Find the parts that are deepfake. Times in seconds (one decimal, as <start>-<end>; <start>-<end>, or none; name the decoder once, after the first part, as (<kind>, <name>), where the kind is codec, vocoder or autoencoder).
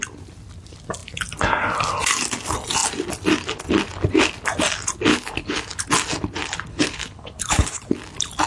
5.1-5.8 (codec, HILCodec); 6.4-7.7